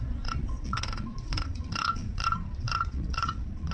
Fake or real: fake